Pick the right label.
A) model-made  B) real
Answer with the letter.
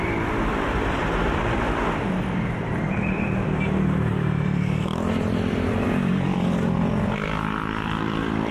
A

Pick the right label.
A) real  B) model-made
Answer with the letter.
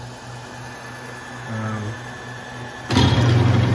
A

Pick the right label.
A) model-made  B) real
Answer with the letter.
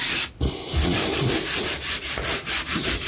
B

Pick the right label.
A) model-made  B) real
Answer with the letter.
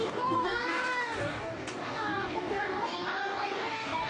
A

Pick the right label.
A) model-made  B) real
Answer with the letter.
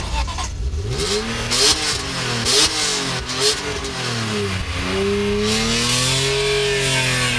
B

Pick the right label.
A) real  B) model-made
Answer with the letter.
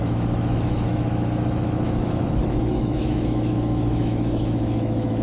B